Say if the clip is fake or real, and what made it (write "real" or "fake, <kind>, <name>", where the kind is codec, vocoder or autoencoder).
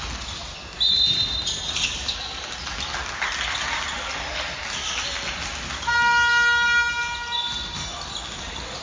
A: real